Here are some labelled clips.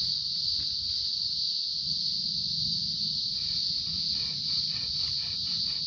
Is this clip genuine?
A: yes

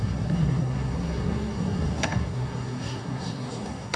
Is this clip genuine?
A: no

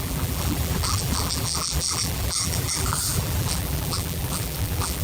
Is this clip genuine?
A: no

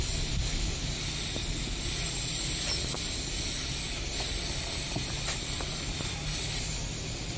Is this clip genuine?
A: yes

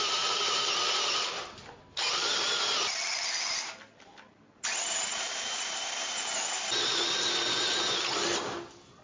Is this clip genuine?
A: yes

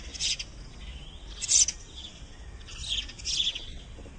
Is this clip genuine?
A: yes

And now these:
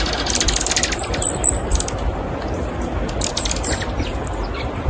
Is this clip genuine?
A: yes